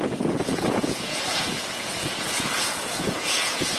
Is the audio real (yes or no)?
no